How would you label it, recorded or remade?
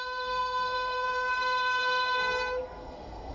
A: remade